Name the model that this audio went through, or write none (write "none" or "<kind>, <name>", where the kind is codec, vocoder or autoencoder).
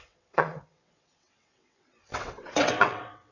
vocoder, WaveNeXt